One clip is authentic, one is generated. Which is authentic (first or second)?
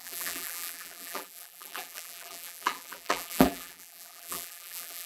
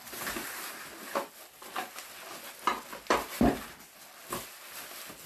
second